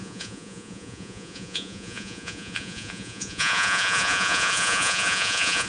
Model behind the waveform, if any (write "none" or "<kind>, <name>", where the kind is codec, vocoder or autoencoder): vocoder, Vocos